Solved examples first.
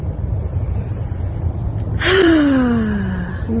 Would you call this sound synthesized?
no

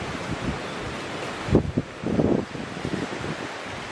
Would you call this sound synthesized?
no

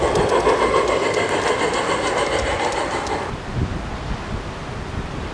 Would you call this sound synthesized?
no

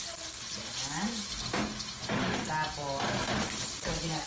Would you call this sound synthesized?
no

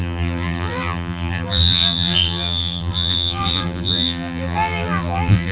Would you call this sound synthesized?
yes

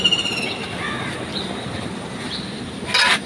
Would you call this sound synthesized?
no